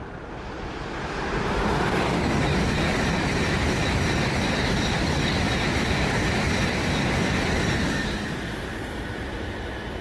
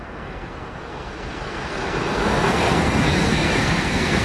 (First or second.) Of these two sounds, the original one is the first